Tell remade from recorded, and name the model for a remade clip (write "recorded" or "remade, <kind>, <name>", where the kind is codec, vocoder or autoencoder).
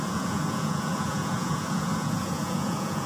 remade, vocoder, Vocos